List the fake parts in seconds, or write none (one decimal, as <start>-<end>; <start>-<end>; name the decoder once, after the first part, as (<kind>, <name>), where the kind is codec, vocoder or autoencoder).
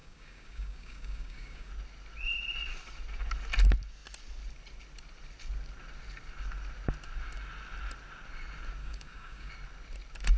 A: 0.0-1.7 (codec, DAC); 8.8-9.5